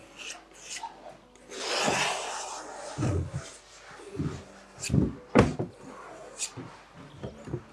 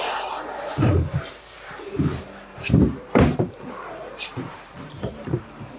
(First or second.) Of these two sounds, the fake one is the second